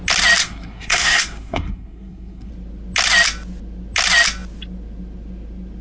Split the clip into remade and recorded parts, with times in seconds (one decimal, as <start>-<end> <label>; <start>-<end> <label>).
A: 0.0-0.4 recorded; 0.4-2.5 remade; 2.5-5.8 recorded